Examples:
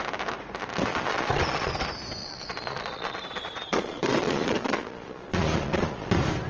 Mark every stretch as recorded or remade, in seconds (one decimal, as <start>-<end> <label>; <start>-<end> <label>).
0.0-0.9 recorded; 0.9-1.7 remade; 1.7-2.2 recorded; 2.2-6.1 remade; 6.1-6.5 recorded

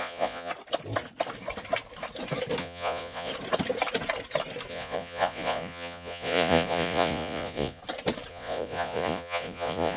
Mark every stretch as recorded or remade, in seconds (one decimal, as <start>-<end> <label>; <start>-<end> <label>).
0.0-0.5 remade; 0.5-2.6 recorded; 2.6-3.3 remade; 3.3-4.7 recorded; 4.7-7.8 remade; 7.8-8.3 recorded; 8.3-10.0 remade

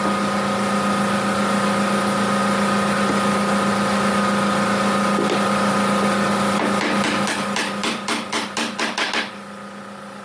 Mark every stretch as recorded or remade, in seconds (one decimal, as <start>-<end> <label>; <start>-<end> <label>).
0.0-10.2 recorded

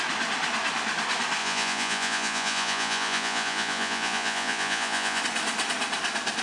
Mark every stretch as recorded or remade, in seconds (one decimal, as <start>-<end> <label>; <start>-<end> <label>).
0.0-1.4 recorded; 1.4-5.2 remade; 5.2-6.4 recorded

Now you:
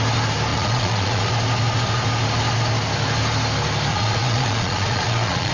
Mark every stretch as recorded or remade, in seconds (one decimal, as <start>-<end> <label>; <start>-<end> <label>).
0.0-0.5 recorded; 0.5-1.3 remade; 1.3-3.9 recorded; 3.9-5.5 remade

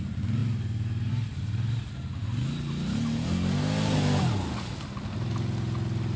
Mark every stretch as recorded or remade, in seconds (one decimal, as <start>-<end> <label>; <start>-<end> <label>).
0.0-6.2 recorded

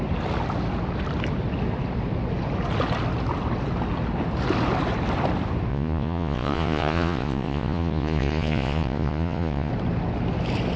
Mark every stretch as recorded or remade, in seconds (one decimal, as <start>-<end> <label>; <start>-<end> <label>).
0.0-5.7 recorded; 5.7-9.7 remade; 9.7-10.8 recorded